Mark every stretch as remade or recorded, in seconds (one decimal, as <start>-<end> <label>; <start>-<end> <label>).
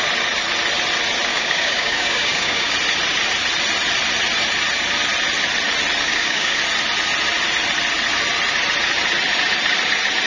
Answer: 0.0-1.3 recorded; 1.3-2.7 remade; 2.7-6.1 recorded; 6.1-6.6 remade; 6.6-10.3 recorded